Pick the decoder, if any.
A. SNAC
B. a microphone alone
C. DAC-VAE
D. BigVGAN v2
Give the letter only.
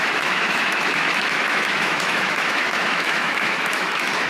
C